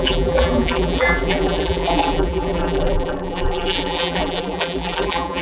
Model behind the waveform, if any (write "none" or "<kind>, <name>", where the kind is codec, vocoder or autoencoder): vocoder, BigVGAN v2